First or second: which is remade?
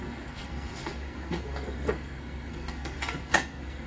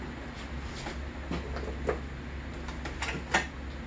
first